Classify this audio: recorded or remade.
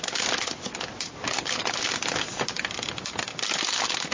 recorded